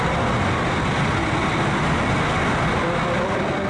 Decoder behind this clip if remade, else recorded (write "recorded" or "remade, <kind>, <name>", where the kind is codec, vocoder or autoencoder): recorded